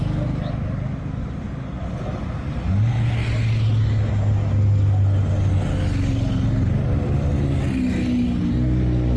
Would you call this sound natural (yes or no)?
yes